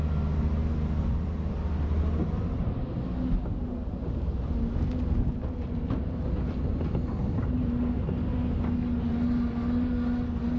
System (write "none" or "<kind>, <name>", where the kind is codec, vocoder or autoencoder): none